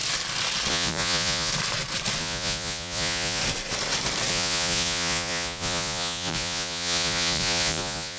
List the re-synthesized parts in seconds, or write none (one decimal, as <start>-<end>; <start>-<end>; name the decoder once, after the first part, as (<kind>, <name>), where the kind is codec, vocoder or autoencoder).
0.7-1.5 (vocoder, Vocos); 2.2-3.4; 4.3-8.2